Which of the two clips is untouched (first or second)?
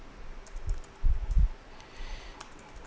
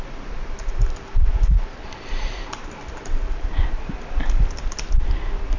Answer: first